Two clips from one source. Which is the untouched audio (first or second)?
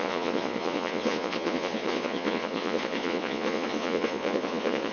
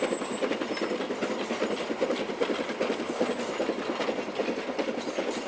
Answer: second